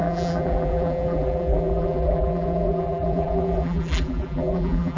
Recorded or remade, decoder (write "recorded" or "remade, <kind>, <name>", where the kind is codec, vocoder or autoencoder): remade, vocoder, BigVGAN v2